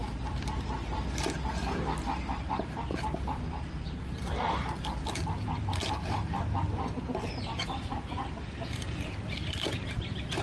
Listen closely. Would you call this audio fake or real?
real